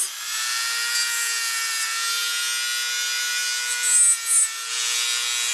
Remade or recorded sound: recorded